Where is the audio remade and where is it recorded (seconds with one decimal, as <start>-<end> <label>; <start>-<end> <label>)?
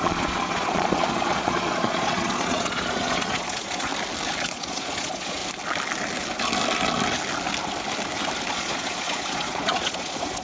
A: 0.0-3.9 remade; 3.9-4.4 recorded; 4.4-5.4 remade; 5.4-8.5 recorded; 8.5-10.4 remade